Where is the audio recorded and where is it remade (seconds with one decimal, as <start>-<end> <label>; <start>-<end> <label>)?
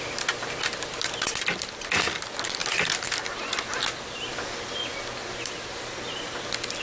0.0-6.8 recorded